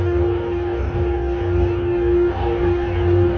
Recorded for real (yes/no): no